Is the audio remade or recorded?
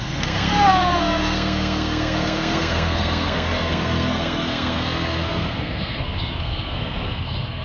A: remade